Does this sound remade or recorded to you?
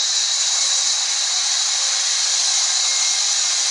recorded